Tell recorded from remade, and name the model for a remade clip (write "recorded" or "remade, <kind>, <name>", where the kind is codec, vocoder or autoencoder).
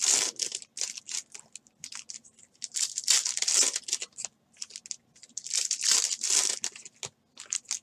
recorded